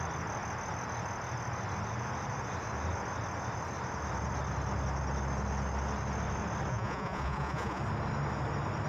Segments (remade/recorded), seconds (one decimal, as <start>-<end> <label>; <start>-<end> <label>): 0.0-6.7 recorded; 6.7-7.8 remade; 7.8-8.9 recorded